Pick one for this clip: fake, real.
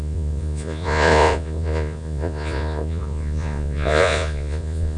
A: fake